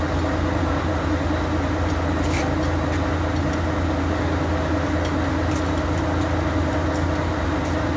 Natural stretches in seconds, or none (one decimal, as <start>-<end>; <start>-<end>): 0.0-8.0